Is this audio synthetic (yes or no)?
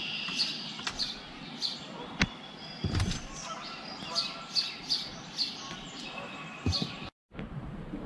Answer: yes